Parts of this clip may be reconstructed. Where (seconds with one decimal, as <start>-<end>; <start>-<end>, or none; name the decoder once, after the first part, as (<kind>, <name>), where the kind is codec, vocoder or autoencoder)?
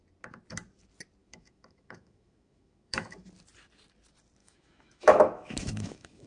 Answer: 1.2-3.3 (autoencoder, DAC-VAE); 4.4-6.3